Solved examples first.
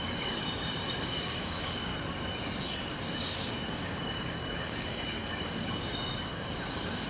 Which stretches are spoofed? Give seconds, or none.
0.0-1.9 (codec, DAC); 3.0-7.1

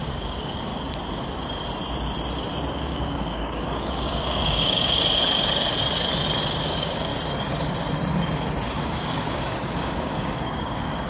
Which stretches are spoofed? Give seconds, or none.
0.0-0.7 (codec, DAC); 2.7-5.0; 6.6-7.1; 8.8-11.1

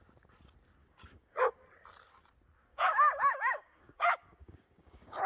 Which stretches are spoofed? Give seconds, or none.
0.8-1.5 (codec, DAC); 2.7-5.3

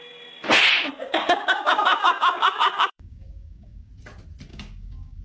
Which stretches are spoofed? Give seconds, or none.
1.0-3.9 (codec, DAC); 4.5-5.2

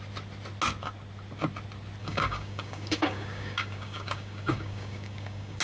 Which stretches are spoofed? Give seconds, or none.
2.0-5.6 (codec, DAC)

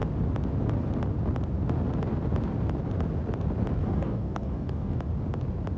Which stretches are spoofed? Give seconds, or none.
3.8-5.0 (codec, DAC)